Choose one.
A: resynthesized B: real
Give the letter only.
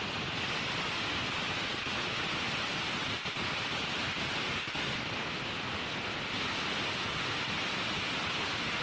B